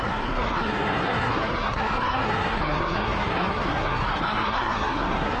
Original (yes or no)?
no